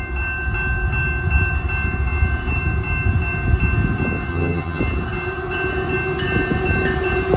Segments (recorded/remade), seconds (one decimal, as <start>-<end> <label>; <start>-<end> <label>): 0.0-4.3 recorded; 4.3-4.8 remade; 4.8-7.4 recorded